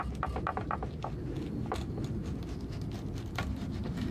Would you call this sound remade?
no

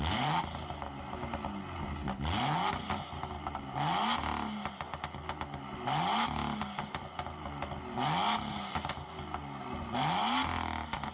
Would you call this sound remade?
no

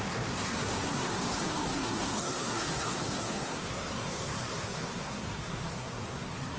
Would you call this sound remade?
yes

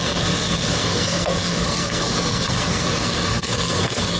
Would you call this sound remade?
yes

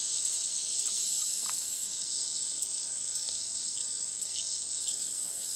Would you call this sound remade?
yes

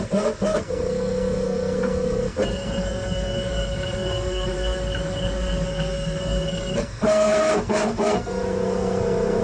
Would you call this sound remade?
yes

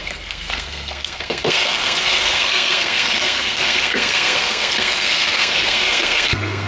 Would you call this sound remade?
yes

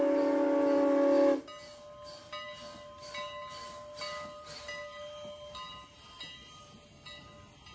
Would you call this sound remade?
no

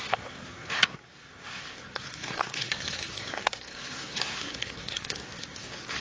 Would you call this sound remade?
yes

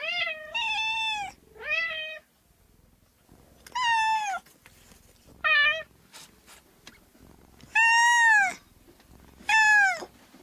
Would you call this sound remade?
no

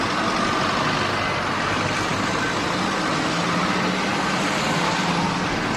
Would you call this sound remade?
no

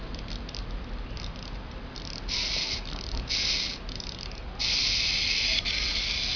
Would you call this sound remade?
no